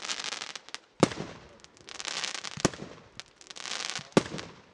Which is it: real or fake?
real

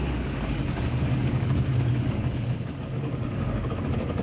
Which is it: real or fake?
fake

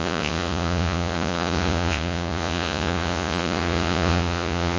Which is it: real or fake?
fake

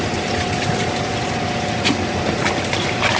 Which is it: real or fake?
real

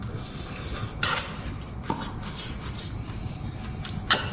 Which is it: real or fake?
real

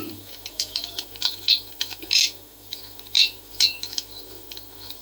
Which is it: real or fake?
fake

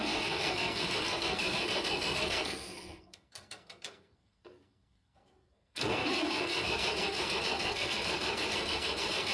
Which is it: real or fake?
fake